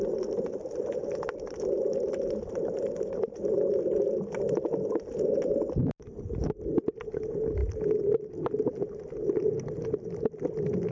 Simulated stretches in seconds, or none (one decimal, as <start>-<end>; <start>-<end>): none